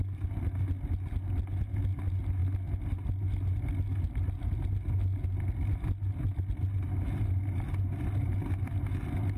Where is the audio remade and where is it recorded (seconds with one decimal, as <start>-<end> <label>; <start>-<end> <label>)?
0.0-9.4 recorded